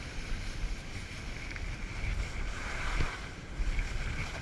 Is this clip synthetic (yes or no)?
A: no